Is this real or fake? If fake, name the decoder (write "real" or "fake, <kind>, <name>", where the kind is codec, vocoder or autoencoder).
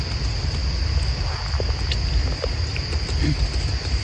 real